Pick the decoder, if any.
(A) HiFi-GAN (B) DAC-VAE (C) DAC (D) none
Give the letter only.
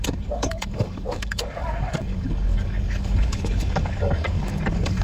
C